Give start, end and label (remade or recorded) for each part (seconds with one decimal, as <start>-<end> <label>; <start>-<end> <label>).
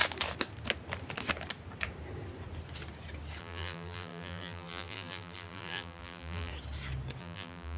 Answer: 0.0-3.4 recorded; 3.4-6.5 remade; 6.5-7.2 recorded; 7.2-7.8 remade